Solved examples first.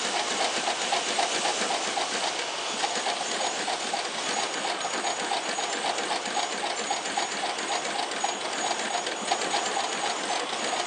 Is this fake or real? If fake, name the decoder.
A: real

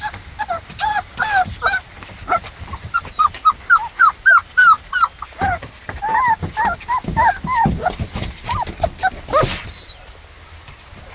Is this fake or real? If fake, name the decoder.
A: real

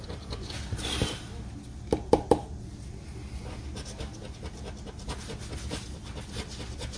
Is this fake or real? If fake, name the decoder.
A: real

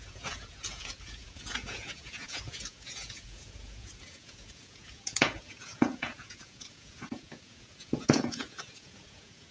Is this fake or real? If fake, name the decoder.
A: fake, vocoder, Vocos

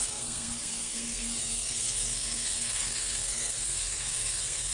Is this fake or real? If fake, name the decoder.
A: fake, codec, SNAC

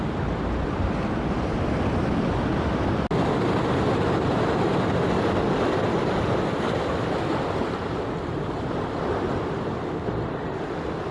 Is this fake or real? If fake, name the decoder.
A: real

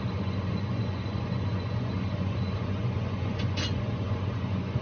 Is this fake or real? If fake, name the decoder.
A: fake, vocoder, Vocos